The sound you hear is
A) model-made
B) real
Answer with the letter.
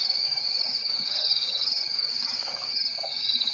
A